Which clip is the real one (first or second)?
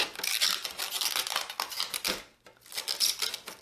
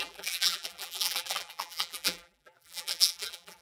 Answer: first